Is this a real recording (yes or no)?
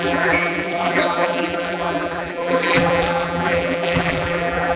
no